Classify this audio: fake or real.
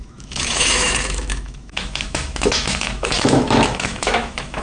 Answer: fake